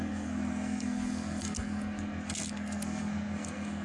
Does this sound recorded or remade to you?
remade